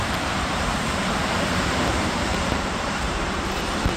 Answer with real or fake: fake